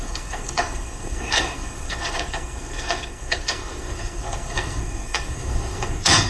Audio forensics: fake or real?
fake